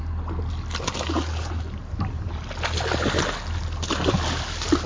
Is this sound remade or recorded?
recorded